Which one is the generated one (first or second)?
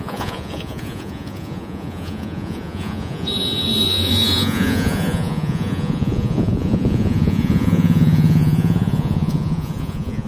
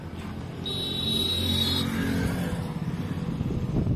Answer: first